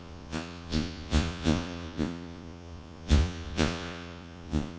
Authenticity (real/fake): fake